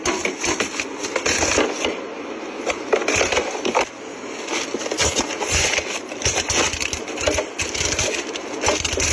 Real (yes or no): yes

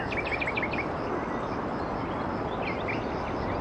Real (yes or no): yes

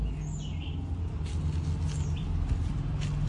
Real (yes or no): yes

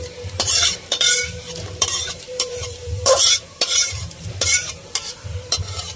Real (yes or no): no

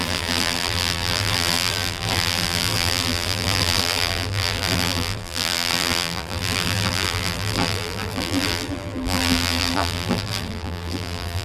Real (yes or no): no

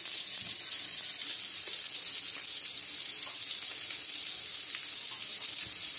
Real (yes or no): yes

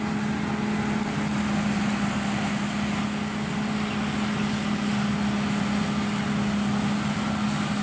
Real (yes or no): yes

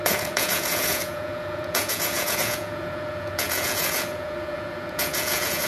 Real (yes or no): no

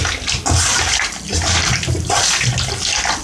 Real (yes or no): yes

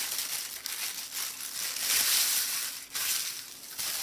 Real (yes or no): yes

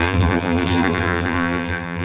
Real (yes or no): no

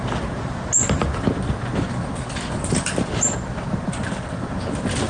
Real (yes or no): yes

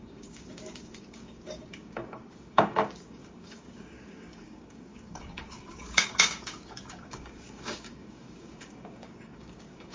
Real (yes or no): no